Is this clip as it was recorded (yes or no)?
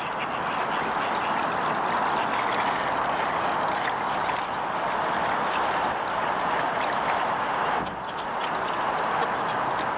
yes